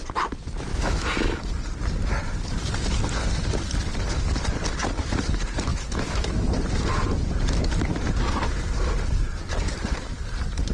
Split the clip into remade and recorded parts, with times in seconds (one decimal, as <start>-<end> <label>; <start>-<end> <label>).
0.0-0.7 recorded; 0.7-1.5 remade; 1.5-5.7 recorded; 5.7-6.4 remade; 6.4-10.7 recorded